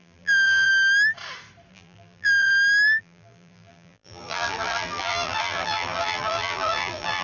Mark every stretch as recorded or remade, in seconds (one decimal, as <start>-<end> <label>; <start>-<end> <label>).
0.0-0.7 remade; 0.7-1.7 recorded; 1.7-2.5 remade; 2.5-3.0 recorded; 3.0-7.2 remade